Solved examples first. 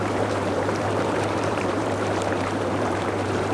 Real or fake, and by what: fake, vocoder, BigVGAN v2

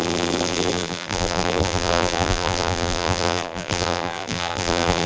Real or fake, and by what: fake, vocoder, BigVGAN v2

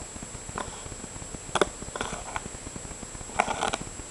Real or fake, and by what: real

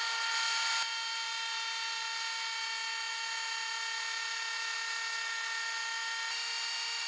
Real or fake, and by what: real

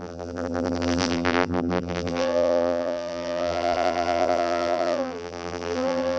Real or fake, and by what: fake, vocoder, BigVGAN v2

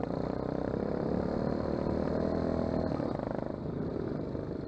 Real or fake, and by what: real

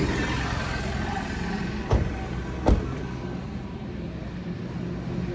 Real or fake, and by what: real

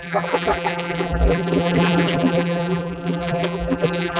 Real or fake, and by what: fake, vocoder, BigVGAN v2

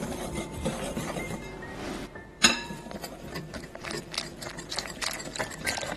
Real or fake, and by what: fake, vocoder, BigVGAN v2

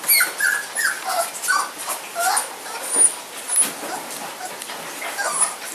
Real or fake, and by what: real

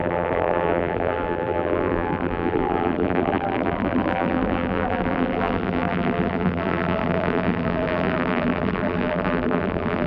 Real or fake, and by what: fake, vocoder, BigVGAN v2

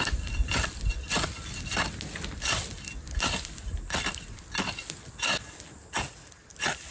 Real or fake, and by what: real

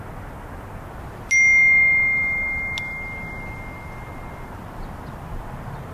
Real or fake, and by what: real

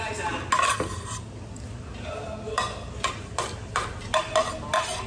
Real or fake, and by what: real